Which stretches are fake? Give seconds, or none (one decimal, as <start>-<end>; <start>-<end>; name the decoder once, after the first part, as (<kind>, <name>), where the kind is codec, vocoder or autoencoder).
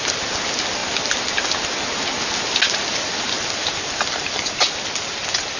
none